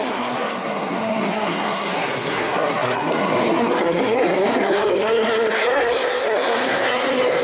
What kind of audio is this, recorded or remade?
remade